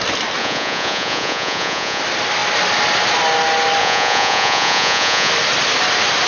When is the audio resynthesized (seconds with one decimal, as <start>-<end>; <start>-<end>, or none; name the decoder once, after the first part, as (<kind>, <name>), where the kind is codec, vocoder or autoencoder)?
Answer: 0.4-2.0 (vocoder, Vocos); 3.8-5.3

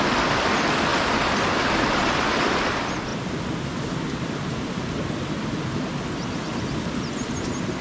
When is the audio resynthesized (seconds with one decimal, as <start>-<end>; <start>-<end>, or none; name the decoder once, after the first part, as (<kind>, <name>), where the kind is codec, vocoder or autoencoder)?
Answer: none

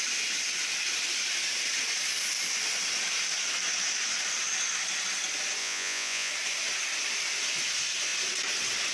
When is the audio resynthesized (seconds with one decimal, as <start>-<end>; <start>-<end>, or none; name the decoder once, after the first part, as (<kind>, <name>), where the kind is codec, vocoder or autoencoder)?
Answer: 5.6-6.3 (vocoder, Vocos)

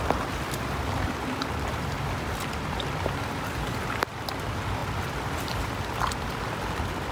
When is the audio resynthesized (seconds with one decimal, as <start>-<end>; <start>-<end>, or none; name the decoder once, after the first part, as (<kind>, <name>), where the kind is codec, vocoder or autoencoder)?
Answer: none

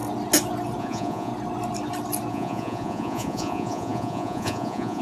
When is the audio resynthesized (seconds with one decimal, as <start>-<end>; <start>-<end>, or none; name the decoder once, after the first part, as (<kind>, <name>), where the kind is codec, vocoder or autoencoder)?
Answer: 0.8-1.3 (vocoder, Vocos); 2.3-5.0